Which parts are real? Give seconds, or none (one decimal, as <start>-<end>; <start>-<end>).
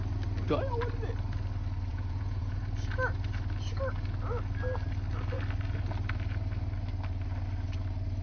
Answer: 0.0-1.9; 2.6-8.2